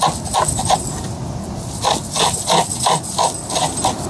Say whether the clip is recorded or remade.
recorded